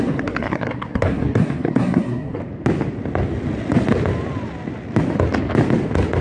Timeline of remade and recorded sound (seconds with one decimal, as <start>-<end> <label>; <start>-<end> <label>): 0.0-2.4 remade; 2.4-6.2 recorded